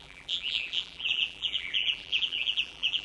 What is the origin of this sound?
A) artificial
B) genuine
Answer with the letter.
A